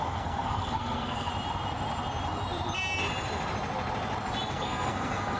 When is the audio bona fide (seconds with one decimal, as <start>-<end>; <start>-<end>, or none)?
1.3-4.5